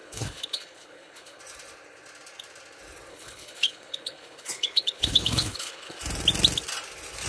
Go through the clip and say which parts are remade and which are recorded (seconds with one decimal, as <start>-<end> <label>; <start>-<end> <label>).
0.0-1.4 remade; 1.4-3.1 recorded; 3.1-6.0 remade; 6.0-7.3 recorded